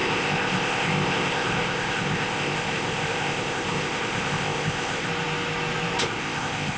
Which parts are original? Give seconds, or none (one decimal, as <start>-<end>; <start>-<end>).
5.1-6.0